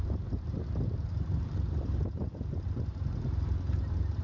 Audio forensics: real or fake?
fake